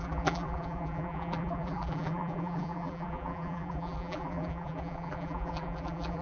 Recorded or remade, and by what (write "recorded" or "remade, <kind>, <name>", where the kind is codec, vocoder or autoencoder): remade, vocoder, BigVGAN v2